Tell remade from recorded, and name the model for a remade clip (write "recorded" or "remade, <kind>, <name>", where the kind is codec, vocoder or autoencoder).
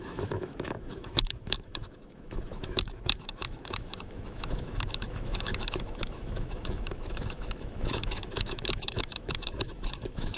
remade, autoencoder, DAC-VAE